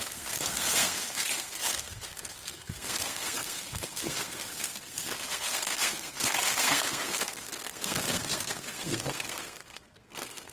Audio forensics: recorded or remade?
remade